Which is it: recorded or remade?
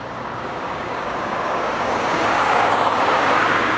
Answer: remade